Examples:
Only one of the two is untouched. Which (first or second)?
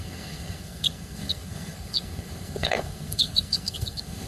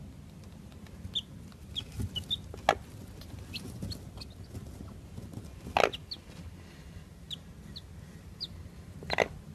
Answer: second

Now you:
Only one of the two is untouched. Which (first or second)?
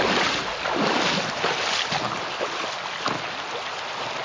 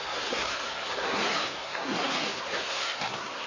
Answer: first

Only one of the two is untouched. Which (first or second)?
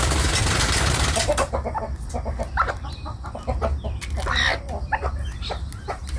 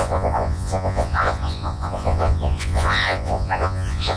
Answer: first